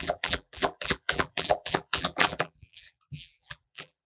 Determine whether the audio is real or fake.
fake